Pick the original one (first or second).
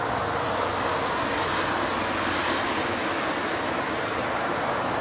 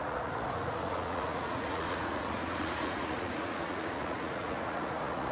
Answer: first